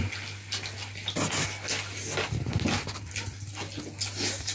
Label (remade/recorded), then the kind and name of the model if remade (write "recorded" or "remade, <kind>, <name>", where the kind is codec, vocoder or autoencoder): recorded